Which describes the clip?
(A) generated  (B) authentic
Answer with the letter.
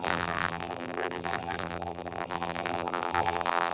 A